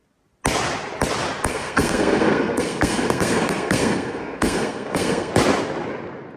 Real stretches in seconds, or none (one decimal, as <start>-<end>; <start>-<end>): 0.0-1.5; 5.3-6.4